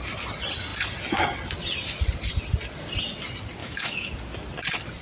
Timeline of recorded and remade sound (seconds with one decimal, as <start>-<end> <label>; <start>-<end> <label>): 0.0-3.6 recorded; 3.6-4.1 remade; 4.1-5.0 recorded

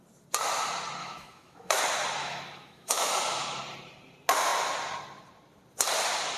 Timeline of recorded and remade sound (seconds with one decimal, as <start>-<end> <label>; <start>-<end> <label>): 0.0-1.0 recorded; 1.0-1.8 remade; 1.8-2.2 recorded; 2.2-3.6 remade; 3.6-6.4 recorded

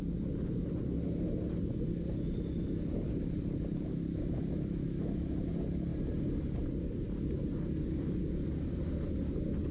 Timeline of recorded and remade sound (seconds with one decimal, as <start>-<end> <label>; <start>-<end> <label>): 0.0-3.9 recorded; 3.9-5.5 remade; 5.5-9.7 recorded

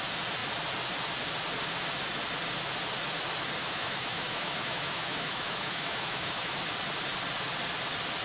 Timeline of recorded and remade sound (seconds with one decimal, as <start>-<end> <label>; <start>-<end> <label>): 0.0-3.6 recorded; 3.6-6.6 remade; 6.6-8.2 recorded

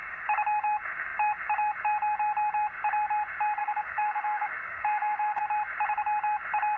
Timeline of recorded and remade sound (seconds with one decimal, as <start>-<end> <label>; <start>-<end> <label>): 0.0-3.6 recorded; 3.6-5.4 remade; 5.4-6.8 recorded

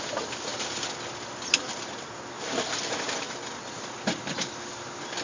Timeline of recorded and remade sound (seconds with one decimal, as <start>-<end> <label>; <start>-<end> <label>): 0.0-5.2 recorded